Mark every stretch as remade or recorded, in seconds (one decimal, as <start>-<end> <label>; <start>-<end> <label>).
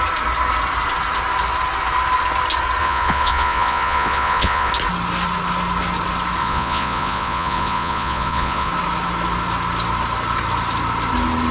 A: 0.0-2.8 recorded; 2.8-4.7 remade; 4.7-6.4 recorded; 6.4-8.7 remade; 8.7-11.5 recorded